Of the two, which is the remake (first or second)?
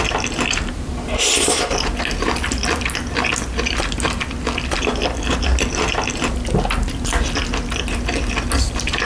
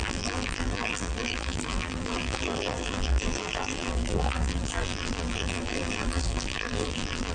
second